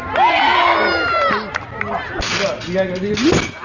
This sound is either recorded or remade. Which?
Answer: recorded